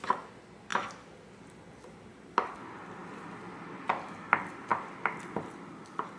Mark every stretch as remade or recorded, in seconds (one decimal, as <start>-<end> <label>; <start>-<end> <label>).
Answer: 0.0-6.2 recorded